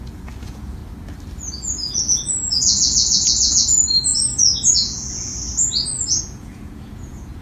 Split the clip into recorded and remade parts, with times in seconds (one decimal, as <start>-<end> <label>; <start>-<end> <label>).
0.0-0.8 remade; 0.8-1.5 recorded; 1.5-4.1 remade; 4.1-4.7 recorded; 4.7-5.3 remade; 5.3-6.2 recorded; 6.2-7.4 remade